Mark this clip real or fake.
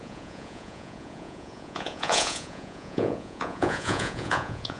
fake